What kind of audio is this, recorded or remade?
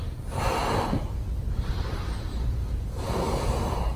recorded